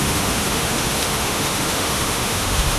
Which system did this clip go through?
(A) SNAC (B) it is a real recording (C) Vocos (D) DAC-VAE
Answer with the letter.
D